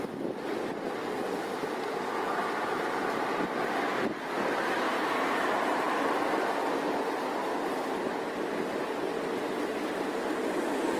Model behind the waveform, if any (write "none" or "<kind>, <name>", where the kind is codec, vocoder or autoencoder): none